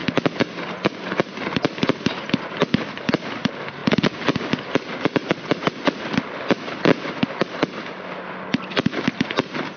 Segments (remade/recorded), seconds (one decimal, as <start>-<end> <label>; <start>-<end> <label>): 0.0-9.8 recorded